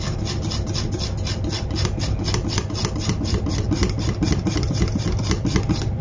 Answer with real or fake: real